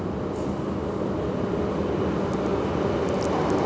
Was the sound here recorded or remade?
recorded